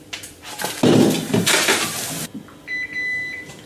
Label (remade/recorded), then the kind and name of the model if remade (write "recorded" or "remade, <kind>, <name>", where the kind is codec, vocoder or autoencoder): recorded